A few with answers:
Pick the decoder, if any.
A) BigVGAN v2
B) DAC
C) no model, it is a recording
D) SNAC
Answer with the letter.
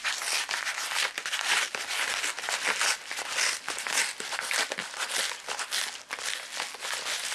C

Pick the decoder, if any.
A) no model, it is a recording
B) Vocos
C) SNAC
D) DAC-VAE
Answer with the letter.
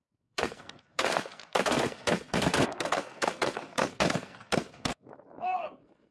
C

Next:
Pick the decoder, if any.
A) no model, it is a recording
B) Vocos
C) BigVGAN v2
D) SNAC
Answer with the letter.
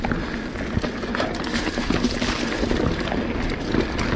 A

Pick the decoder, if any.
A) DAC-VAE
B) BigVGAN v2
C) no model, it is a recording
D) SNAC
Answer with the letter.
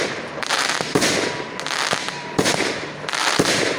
C